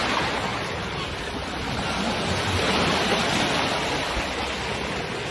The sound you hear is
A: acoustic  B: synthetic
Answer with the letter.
A